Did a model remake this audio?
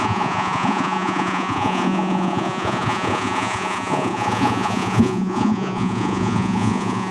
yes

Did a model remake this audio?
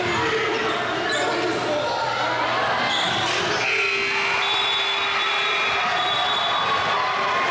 no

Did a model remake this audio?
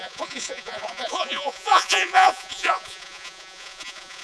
yes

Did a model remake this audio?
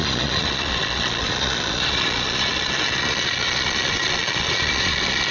yes